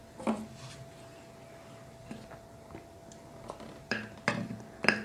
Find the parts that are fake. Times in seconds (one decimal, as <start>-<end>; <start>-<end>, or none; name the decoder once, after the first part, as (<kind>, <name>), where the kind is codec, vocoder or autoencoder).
2.0-5.0 (vocoder, BigVGAN v2)